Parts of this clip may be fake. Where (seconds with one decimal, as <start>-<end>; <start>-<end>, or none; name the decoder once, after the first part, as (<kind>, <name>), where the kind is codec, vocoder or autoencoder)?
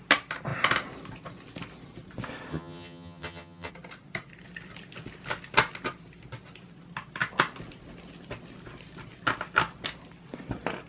2.5-3.7 (vocoder, HiFi-GAN)